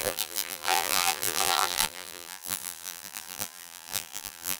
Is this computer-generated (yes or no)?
yes